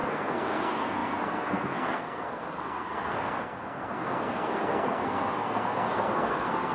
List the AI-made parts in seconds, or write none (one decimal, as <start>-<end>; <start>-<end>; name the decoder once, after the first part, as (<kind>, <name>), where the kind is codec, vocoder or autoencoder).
0.0-6.7 (codec, SNAC)

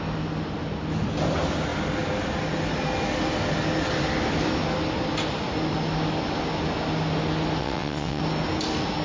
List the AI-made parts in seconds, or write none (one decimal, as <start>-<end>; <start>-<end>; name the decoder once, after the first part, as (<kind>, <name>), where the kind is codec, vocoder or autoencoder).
7.6-8.2 (vocoder, WaveNeXt)

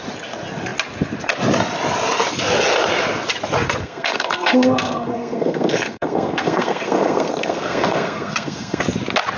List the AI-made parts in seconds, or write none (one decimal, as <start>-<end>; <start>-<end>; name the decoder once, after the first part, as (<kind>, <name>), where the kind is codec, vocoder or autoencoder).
3.8-8.8 (codec, SNAC)

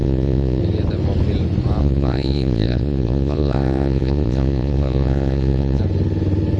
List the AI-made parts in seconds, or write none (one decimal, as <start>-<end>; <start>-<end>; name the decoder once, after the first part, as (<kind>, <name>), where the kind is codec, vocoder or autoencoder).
0.0-0.6 (vocoder, Vocos); 1.8-5.8

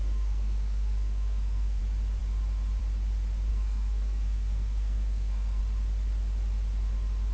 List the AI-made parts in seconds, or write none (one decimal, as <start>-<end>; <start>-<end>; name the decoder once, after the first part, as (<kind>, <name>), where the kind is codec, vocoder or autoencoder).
0.0-1.8 (codec, SNAC); 3.5-5.6

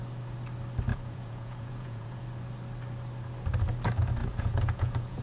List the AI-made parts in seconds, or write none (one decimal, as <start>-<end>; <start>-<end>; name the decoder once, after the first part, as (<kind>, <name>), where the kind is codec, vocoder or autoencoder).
0.9-2.2 (vocoder, Vocos); 4.2-5.2

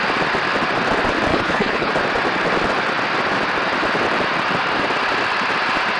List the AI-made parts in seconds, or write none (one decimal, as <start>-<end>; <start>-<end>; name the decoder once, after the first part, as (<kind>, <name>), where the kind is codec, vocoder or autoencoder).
1.3-1.9 (codec, HILCodec)

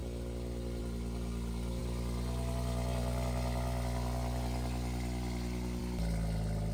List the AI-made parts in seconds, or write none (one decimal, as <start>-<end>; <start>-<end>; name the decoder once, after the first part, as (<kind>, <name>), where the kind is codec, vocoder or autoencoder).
none